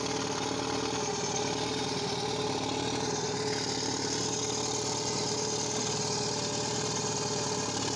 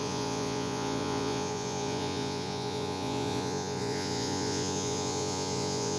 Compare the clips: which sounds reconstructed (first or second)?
second